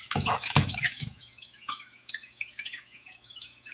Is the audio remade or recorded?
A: remade